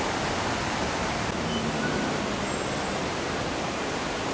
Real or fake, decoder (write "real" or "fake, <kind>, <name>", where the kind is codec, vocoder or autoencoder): real